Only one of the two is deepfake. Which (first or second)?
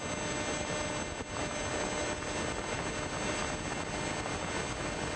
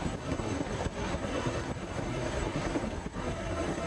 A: second